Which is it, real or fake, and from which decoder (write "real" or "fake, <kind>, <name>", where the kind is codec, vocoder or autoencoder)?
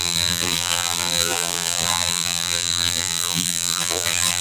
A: fake, vocoder, BigVGAN v2